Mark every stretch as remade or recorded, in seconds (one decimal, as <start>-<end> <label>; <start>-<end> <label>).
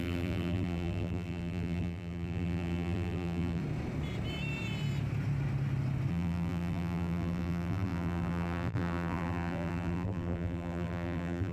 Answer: 0.0-3.6 remade; 3.6-6.1 recorded; 6.1-11.5 remade